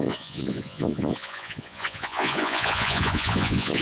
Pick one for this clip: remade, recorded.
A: remade